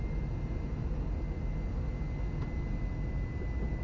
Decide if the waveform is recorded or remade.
recorded